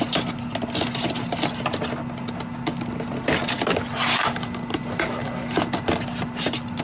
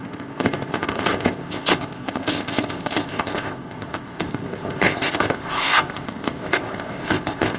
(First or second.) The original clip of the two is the first